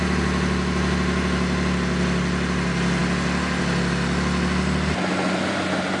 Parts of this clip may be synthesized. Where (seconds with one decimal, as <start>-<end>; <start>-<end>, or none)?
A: none